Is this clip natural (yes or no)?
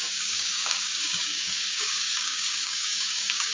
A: no